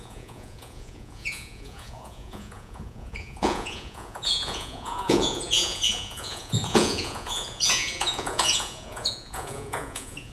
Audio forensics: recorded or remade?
remade